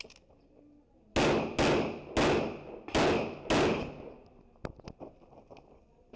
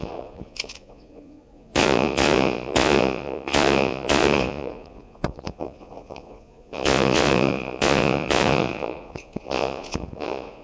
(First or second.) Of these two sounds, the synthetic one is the second